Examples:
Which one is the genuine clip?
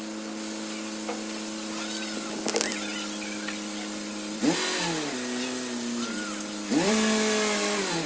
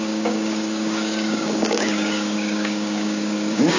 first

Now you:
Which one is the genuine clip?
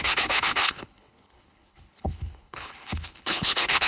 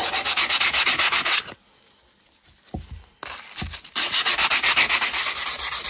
second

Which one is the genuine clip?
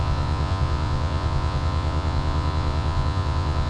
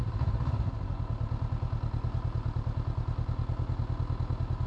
second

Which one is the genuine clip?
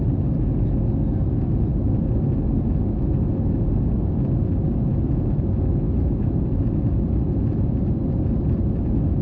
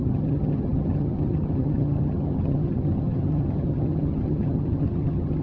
first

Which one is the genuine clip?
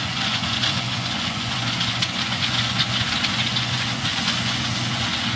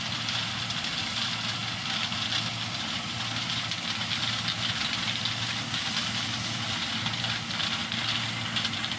second